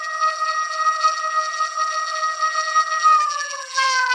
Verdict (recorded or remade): remade